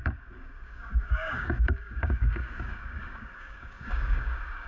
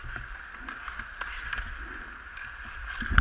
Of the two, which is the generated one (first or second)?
first